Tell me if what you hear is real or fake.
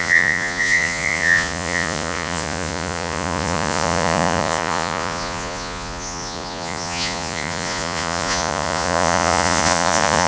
fake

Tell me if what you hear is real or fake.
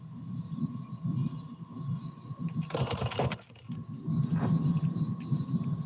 real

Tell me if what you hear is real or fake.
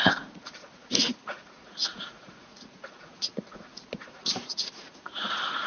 fake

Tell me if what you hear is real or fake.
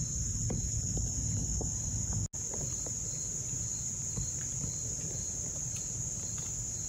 real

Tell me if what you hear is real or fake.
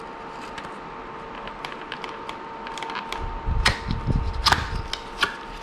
real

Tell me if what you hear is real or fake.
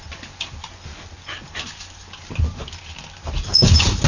real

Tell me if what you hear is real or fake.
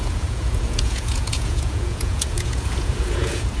fake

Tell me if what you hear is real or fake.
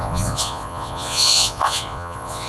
fake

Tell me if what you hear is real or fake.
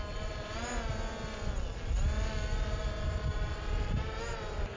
real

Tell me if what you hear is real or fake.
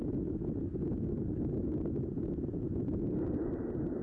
real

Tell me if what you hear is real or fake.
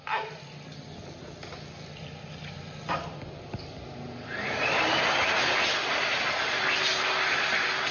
real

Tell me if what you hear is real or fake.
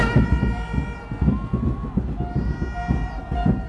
real